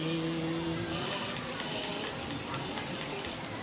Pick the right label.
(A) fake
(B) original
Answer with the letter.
B